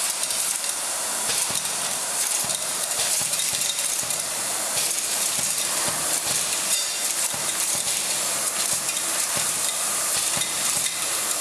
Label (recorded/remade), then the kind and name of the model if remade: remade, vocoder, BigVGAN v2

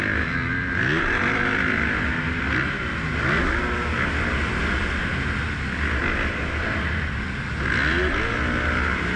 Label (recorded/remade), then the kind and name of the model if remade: recorded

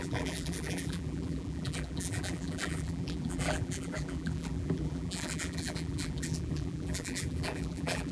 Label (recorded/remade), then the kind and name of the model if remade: remade, vocoder, BigVGAN v2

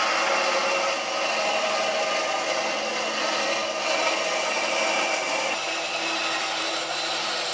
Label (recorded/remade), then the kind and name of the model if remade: recorded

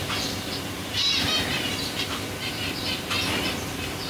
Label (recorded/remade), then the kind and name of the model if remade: remade, vocoder, BigVGAN v2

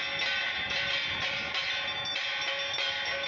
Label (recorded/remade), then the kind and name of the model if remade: recorded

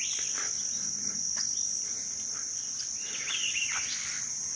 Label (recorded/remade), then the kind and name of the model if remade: recorded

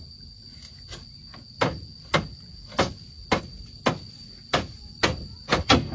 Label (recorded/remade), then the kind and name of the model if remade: recorded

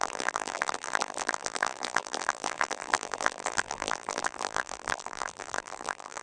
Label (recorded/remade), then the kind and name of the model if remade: remade, vocoder, BigVGAN v2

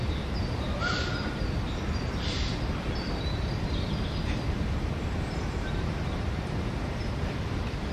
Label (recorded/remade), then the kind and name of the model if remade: remade, vocoder, BigVGAN v2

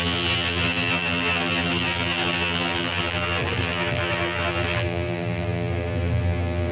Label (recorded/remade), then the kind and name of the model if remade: remade, vocoder, BigVGAN v2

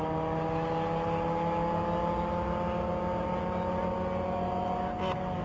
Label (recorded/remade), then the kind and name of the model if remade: recorded